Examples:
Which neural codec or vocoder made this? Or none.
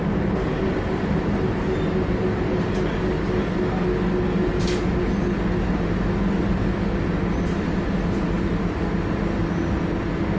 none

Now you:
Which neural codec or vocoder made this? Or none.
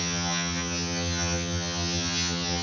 vocoder, HiFi-GAN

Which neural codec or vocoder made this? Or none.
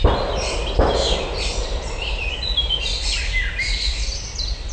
none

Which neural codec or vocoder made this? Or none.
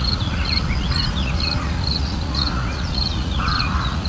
vocoder, Vocos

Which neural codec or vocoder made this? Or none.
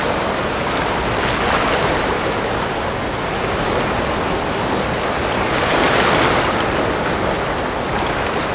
none